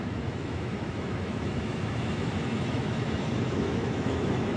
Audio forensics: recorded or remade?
remade